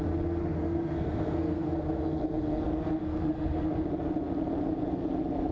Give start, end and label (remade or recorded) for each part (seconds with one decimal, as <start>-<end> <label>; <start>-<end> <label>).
0.0-0.4 recorded; 0.4-2.0 remade; 2.0-3.0 recorded; 3.0-3.7 remade; 3.7-5.5 recorded